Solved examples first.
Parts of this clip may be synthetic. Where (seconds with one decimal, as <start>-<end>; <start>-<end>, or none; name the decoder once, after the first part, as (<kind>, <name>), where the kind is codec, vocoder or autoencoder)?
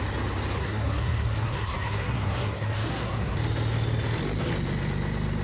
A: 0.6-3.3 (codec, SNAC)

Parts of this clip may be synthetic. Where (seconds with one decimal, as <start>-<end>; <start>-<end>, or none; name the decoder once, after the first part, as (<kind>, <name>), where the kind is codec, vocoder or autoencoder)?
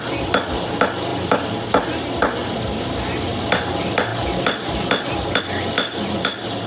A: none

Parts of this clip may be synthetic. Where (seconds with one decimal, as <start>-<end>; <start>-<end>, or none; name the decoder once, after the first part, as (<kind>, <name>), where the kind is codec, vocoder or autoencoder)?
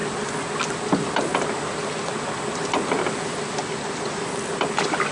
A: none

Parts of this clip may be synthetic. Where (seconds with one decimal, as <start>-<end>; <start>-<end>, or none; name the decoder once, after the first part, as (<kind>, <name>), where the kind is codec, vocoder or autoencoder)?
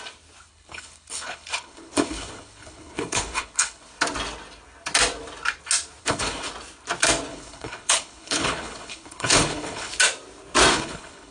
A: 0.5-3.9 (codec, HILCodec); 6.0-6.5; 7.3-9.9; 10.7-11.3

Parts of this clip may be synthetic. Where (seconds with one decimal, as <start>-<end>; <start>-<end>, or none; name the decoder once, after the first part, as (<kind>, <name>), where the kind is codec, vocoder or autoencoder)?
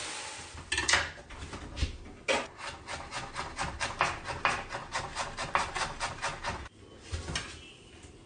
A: none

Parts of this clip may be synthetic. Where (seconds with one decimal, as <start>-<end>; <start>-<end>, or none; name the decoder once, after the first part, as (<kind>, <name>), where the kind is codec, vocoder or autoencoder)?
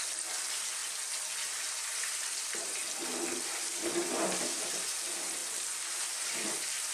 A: 0.0-0.8 (vocoder, BigVGAN v2); 1.6-2.8; 3.3-6.9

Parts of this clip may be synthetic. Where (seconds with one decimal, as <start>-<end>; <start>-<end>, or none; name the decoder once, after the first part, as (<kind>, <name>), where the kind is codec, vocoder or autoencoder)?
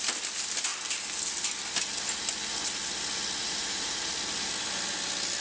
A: 3.4-4.1 (vocoder, Vocos)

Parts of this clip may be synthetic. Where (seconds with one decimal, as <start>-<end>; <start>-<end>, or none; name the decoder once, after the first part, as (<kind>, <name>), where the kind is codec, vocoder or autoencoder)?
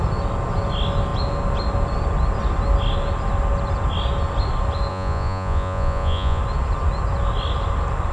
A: 4.9-6.4 (vocoder, Vocos)